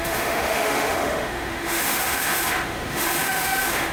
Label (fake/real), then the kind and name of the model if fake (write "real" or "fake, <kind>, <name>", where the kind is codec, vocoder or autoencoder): fake, autoencoder, DAC-VAE